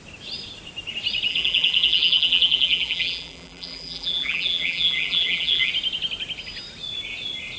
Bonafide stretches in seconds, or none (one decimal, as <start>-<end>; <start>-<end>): 0.0-1.3; 5.7-7.6